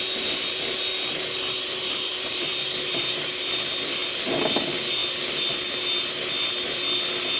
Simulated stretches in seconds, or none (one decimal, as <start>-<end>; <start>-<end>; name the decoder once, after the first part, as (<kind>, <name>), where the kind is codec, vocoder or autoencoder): 2.1-3.1 (vocoder, BigVGAN v2); 5.0-5.5